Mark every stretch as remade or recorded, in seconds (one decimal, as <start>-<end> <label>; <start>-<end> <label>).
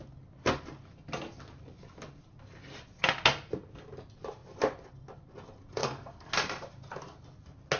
0.0-5.8 recorded; 5.8-6.3 remade; 6.3-7.8 recorded